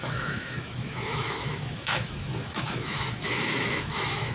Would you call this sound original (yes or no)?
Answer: no